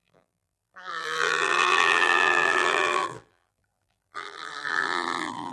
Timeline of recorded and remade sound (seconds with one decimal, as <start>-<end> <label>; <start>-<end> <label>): 0.0-5.5 remade